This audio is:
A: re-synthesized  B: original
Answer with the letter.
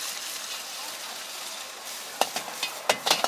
A